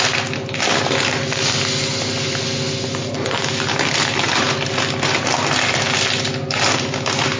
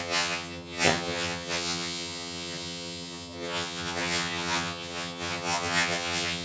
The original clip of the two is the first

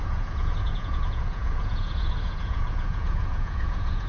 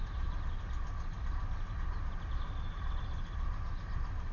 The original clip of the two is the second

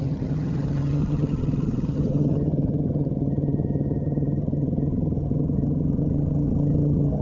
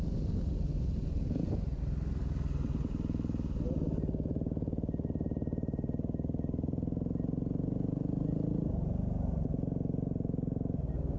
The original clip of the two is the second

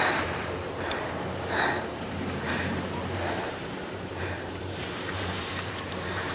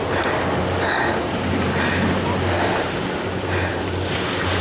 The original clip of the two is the second